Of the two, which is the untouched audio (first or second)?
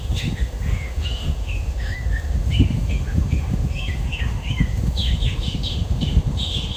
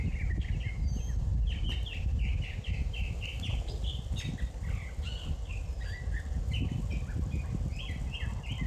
second